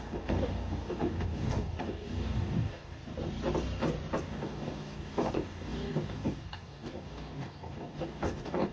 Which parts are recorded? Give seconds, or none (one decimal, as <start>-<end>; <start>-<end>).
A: 3.0-4.2